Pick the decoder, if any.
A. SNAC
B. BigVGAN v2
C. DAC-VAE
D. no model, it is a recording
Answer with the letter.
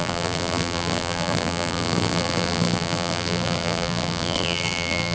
B